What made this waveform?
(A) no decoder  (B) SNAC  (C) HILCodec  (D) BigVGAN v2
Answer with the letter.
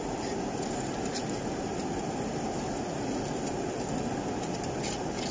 A